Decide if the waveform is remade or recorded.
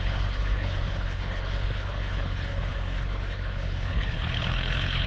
remade